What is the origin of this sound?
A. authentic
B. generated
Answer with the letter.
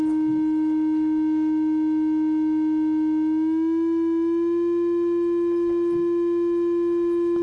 A